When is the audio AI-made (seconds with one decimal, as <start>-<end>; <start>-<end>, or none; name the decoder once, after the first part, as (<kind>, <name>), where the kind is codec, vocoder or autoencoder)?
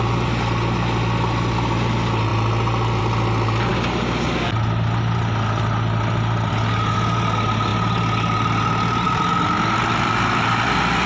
none